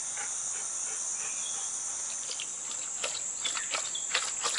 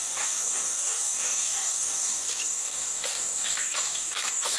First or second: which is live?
first